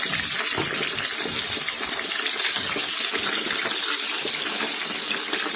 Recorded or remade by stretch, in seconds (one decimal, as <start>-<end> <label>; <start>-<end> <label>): 0.0-5.6 recorded